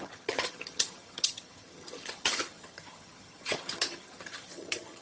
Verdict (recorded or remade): remade